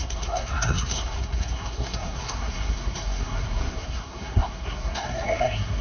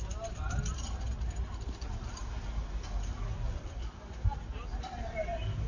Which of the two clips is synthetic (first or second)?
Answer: first